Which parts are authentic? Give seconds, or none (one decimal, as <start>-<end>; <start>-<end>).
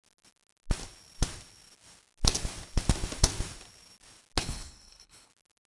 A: 0.0-4.4; 5.3-5.8